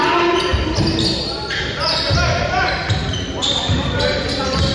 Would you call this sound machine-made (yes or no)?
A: no